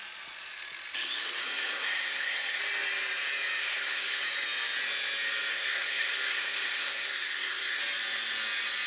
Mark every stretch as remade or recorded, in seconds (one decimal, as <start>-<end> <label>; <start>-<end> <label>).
0.0-1.4 recorded; 1.4-2.6 remade; 2.6-3.6 recorded; 3.6-4.2 remade; 4.2-5.5 recorded; 5.5-7.8 remade; 7.8-8.9 recorded